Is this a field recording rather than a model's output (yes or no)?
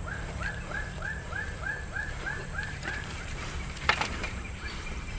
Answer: no